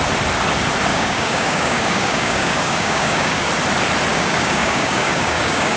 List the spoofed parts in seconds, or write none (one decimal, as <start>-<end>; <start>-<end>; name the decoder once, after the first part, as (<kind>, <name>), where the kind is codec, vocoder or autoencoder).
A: 0.9-3.5 (codec, DAC); 4.1-5.8